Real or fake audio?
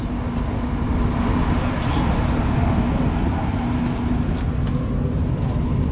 real